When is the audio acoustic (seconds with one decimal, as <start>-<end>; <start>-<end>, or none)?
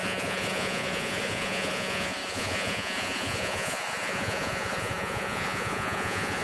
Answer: none